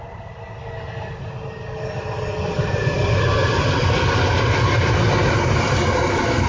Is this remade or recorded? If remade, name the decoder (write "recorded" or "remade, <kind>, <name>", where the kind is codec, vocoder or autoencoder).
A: recorded